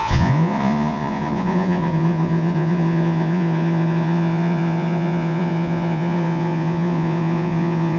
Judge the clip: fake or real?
fake